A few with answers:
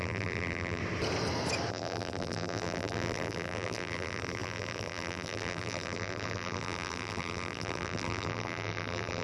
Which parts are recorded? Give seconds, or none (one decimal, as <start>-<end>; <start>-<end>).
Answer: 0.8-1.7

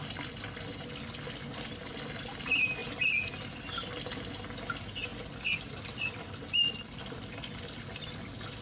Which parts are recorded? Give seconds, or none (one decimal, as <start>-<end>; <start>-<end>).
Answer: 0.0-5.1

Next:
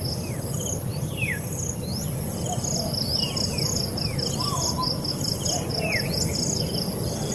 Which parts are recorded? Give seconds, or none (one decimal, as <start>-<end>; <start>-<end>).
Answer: 0.0-0.9; 1.5-7.3

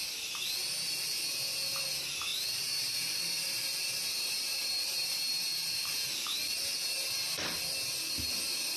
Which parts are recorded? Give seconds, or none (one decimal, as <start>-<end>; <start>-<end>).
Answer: 0.0-2.3; 6.7-8.8

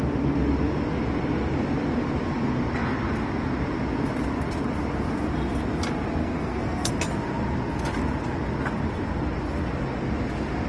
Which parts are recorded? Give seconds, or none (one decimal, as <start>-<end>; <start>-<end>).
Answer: 0.0-6.2; 6.9-10.7

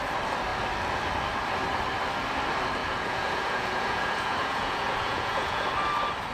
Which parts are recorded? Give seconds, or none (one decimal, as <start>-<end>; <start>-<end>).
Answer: 0.0-2.8; 5.7-6.3